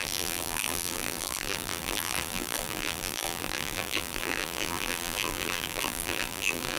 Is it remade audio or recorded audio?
remade